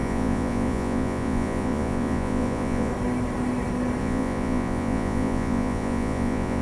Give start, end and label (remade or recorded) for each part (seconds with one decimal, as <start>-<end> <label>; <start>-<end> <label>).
0.0-2.9 remade; 2.9-4.0 recorded; 4.0-6.6 remade